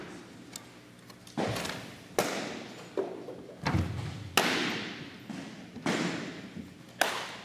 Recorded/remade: recorded